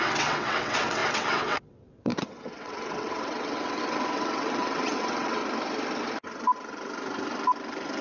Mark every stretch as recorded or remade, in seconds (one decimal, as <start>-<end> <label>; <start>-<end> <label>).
0.0-5.4 remade; 5.4-8.0 recorded